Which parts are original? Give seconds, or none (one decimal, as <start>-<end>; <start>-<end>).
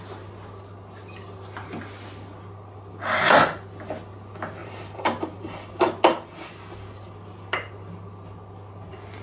0.0-4.6; 5.4-9.2